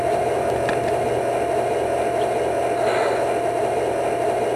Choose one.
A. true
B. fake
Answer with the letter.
A